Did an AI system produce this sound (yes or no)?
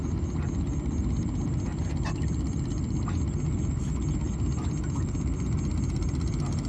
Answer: no